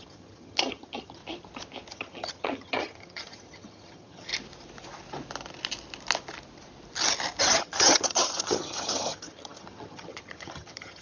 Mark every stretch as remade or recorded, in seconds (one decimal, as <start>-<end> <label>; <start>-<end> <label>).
0.0-1.2 remade; 1.2-1.9 recorded; 1.9-4.3 remade; 4.3-7.4 recorded; 7.4-11.0 remade